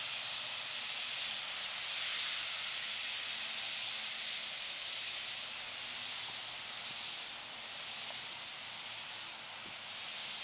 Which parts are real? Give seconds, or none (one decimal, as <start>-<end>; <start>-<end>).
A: 0.0-10.4